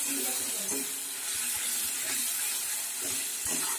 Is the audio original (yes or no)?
yes